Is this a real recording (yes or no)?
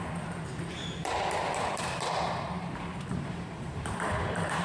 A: no